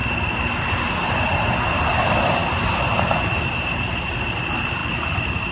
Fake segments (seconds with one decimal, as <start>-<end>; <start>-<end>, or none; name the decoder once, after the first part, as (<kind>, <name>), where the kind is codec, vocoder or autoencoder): 0.9-5.5 (vocoder, BigVGAN v2)